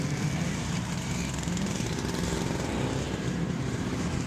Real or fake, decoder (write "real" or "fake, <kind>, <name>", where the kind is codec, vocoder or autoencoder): fake, vocoder, BigVGAN v2